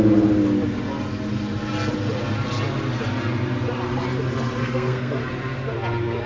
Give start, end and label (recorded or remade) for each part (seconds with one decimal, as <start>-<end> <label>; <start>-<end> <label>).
0.0-4.6 recorded; 4.6-5.2 remade; 5.2-6.3 recorded